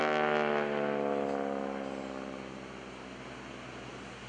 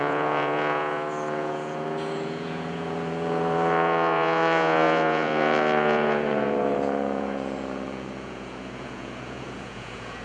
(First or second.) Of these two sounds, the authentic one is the first